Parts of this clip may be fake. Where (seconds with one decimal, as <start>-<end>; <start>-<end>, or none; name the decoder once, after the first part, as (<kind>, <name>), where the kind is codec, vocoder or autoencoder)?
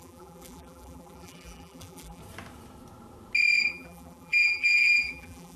0.0-2.2 (vocoder, BigVGAN v2); 3.7-5.6